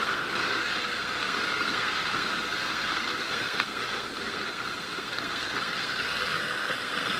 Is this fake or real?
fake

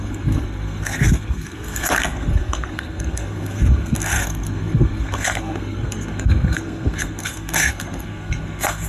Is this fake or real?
fake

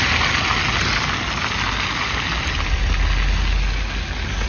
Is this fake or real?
real